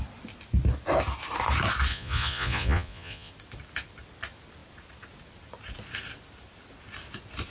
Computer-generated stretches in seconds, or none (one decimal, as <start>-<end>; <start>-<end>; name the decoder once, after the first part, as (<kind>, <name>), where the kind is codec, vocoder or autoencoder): 1.9-3.3 (vocoder, Vocos)